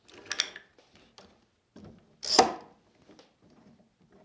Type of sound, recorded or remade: recorded